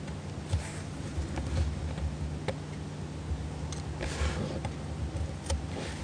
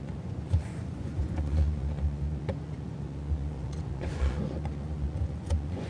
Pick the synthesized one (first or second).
second